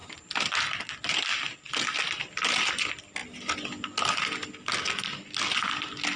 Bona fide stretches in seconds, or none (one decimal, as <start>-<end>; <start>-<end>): 0.0-6.2